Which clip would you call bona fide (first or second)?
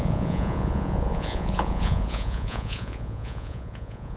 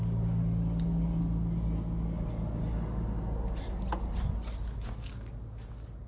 second